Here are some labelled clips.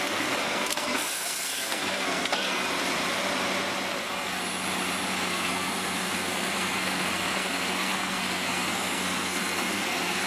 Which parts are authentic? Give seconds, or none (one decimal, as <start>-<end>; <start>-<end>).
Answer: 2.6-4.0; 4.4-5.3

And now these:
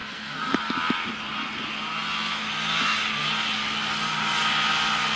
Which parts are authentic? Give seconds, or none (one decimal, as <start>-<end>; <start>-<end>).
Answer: 0.6-5.2

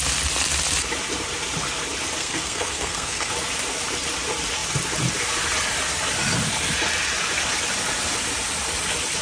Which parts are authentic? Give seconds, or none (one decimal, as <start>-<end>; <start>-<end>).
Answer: 0.0-2.2; 3.3-9.2

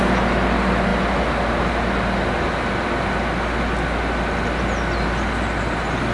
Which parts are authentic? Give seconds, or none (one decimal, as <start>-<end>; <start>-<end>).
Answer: 0.0-6.1

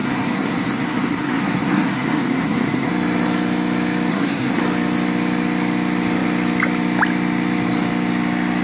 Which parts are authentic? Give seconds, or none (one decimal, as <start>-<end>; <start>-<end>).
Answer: 2.9-4.1; 4.6-8.6

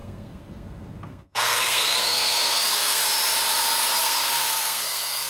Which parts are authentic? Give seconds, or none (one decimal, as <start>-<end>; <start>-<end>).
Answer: 3.0-4.0

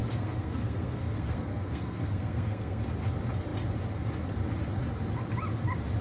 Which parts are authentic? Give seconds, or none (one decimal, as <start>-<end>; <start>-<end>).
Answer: 2.8-6.0

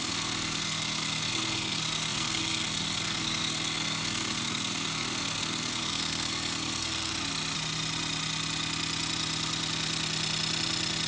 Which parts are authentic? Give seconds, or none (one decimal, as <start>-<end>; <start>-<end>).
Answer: 7.1-11.1